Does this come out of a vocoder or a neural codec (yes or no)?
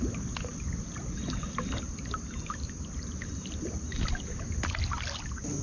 no